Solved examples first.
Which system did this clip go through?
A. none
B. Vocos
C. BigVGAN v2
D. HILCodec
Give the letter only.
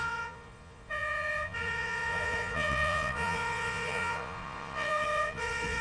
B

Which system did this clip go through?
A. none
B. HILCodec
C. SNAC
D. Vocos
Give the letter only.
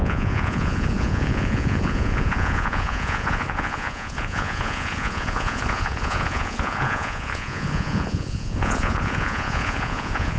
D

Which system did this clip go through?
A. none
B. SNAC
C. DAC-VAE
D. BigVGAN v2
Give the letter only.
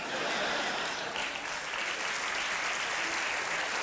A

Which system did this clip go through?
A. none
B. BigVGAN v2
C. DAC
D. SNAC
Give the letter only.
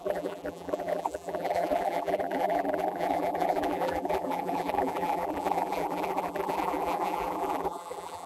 B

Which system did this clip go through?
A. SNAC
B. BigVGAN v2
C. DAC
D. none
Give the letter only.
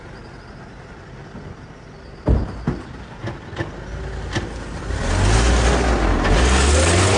D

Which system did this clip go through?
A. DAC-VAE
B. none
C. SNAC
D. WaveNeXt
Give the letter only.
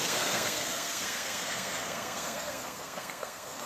C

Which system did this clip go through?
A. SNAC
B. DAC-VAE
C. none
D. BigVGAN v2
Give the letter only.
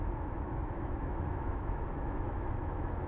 B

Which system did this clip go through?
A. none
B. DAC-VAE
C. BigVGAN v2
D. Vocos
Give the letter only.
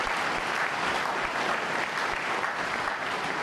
A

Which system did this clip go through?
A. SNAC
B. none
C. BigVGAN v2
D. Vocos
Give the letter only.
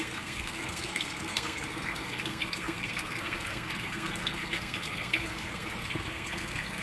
A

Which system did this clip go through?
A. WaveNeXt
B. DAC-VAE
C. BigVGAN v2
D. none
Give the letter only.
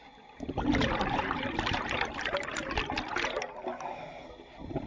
D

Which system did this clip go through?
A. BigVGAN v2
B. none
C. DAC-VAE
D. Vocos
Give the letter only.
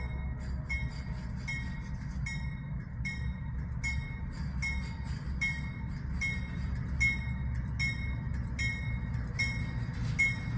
B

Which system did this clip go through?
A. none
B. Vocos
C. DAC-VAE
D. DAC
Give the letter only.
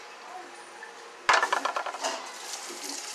A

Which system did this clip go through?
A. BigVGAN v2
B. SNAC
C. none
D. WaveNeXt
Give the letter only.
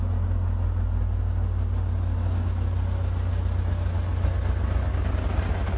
C